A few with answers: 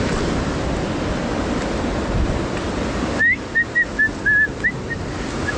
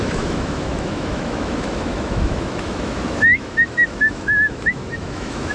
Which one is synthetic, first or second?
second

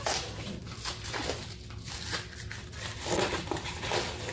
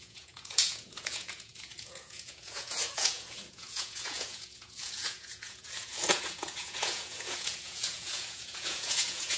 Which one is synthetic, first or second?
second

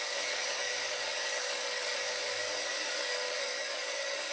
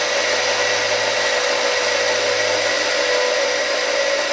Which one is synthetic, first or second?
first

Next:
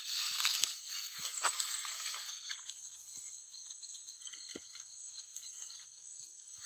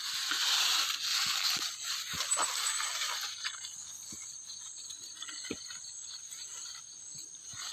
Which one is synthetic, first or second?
first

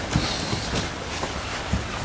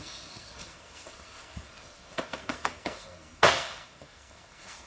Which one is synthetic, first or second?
second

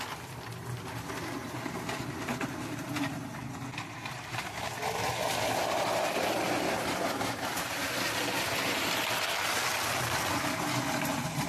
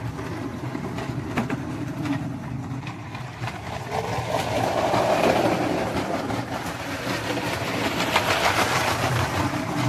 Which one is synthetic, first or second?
second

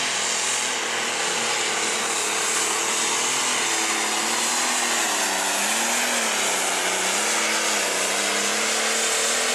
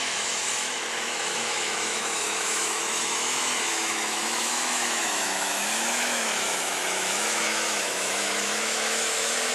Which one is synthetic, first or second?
second